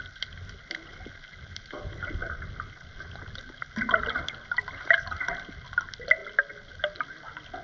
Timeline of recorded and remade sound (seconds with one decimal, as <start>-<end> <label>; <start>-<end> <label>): 0.0-7.6 recorded